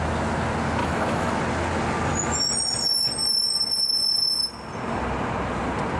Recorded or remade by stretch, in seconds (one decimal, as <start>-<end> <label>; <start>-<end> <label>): 0.0-0.8 recorded; 0.8-1.3 remade; 1.3-6.0 recorded

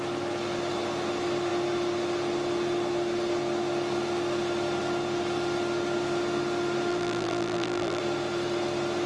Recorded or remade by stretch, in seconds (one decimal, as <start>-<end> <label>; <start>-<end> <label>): 0.0-6.9 recorded; 6.9-8.0 remade; 8.0-9.1 recorded